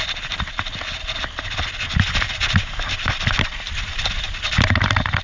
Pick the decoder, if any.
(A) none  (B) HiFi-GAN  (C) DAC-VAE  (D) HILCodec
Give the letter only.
A